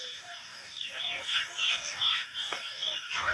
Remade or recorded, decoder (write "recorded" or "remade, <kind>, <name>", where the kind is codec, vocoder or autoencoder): remade, codec, DAC